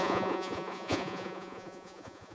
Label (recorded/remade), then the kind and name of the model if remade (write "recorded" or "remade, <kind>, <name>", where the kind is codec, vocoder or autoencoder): remade, vocoder, Vocos